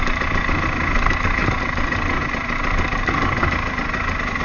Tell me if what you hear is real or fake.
real